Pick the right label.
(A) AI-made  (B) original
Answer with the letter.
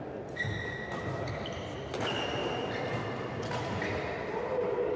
B